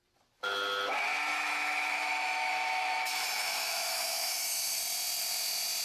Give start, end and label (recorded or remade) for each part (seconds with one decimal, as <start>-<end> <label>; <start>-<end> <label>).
0.0-1.3 recorded; 1.3-4.8 remade; 4.8-5.8 recorded